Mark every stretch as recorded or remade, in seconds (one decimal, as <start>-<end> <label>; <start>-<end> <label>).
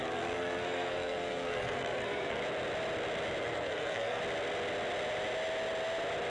0.0-2.4 remade; 2.4-3.4 recorded; 3.4-4.2 remade; 4.2-6.3 recorded